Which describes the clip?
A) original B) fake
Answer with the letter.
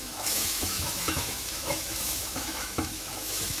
B